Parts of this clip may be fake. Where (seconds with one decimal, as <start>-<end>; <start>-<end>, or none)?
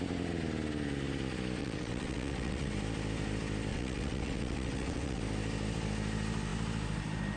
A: 1.6-2.7; 3.7-5.2